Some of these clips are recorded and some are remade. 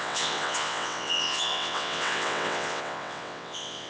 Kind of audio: remade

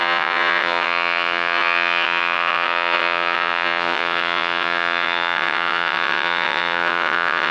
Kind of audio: remade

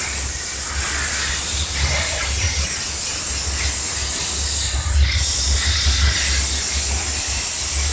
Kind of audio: recorded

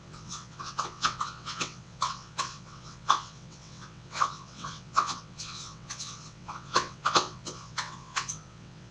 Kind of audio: remade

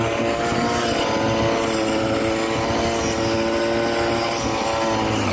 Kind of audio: recorded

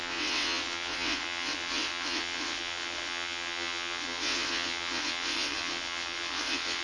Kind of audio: remade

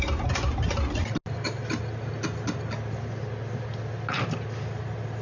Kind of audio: recorded